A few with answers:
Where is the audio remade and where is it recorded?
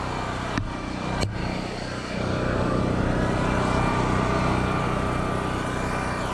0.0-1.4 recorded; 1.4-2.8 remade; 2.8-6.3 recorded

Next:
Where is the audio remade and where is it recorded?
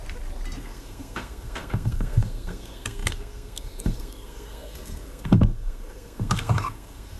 0.0-0.6 recorded; 0.6-7.2 remade